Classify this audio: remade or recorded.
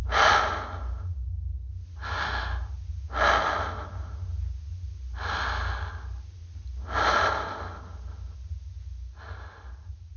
recorded